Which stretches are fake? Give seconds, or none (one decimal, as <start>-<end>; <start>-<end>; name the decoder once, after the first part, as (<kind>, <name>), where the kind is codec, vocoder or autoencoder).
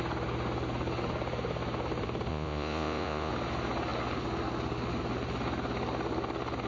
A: 2.3-3.3 (vocoder, Vocos)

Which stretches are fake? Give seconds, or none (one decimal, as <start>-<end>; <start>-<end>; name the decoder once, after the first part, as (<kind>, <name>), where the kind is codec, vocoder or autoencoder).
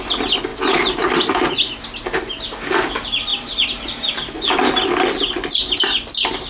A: none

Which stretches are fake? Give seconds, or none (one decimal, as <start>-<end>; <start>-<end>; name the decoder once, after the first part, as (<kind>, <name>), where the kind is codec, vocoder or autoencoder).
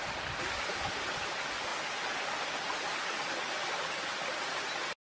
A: none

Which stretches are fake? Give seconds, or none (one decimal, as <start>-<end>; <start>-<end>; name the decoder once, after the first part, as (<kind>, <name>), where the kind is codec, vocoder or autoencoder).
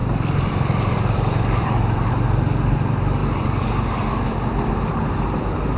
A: 0.0-2.1 (vocoder, BigVGAN v2)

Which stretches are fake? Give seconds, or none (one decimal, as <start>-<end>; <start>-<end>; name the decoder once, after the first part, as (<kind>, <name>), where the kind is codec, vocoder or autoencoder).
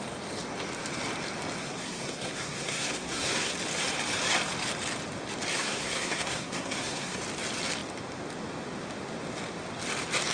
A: 1.6-3.5 (codec, SNAC); 5.5-7.2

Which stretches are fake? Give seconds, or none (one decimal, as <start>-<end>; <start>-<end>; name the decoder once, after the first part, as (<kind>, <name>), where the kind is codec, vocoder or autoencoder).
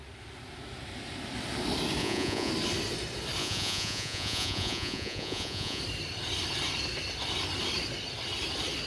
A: 2.0-2.5 (vocoder, Vocos); 3.4-5.8